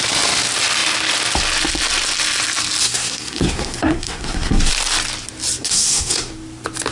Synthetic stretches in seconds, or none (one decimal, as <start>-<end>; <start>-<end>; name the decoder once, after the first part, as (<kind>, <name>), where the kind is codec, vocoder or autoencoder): 2.8-4.7 (codec, SNAC); 5.6-6.3